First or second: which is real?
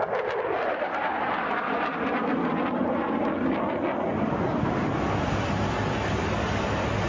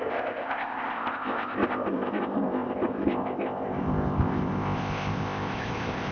first